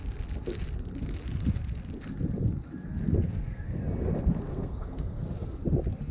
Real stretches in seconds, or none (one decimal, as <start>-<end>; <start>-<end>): 0.0-3.2; 3.8-4.5; 5.2-6.1